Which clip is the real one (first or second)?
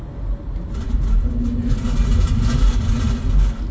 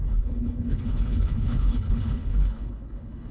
first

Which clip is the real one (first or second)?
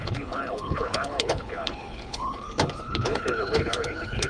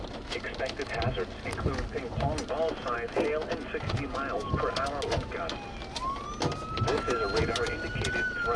second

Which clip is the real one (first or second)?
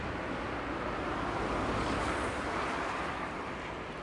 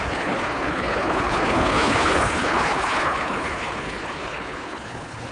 first